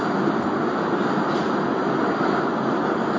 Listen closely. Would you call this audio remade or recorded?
recorded